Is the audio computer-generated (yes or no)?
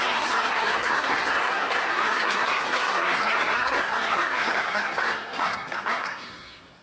yes